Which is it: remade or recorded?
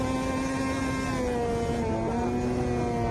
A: recorded